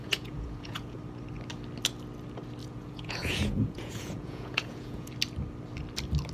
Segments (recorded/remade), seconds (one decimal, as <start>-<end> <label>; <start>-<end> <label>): 0.0-1.0 remade; 1.0-2.6 recorded; 2.6-5.1 remade; 5.1-6.3 recorded